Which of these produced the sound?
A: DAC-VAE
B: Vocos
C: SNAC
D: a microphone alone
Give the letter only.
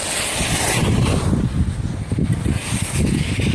D